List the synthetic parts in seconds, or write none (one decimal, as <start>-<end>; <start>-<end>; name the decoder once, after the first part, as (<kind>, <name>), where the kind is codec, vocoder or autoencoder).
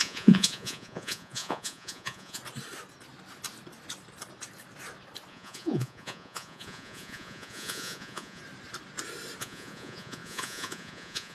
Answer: 0.0-2.4 (vocoder, Vocos); 5.3-8.4; 9.4-11.3